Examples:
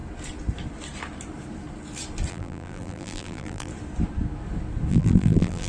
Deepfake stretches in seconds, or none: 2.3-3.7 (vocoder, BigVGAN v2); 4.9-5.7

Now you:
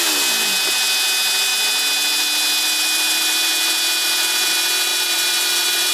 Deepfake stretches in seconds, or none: 4.9-5.9 (vocoder, BigVGAN v2)

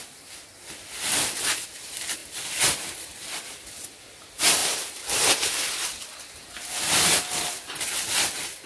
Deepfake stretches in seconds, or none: none

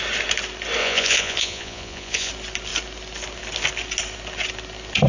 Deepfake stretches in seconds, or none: 0.8-2.3 (vocoder, Vocos)

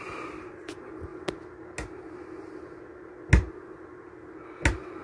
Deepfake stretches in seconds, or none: none

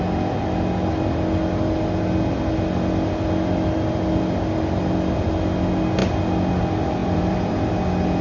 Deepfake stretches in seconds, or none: 7.0-7.7 (vocoder, BigVGAN v2)